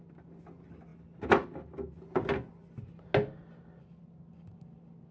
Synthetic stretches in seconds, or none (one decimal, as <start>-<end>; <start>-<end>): none